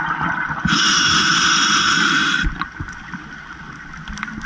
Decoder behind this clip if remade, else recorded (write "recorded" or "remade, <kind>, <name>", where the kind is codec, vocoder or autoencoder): recorded